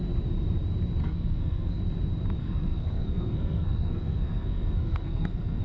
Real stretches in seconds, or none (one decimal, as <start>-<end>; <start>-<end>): 0.0-1.0; 1.8-2.4